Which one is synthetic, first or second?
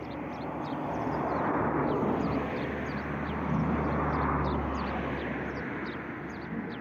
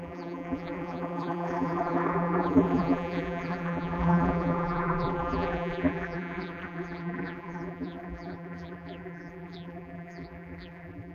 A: second